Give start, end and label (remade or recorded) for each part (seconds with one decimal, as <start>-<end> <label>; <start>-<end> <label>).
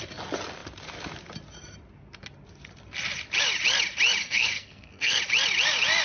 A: 0.0-4.2 recorded; 4.2-5.2 remade; 5.2-6.0 recorded